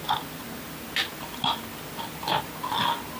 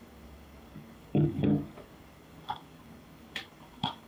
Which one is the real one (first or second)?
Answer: first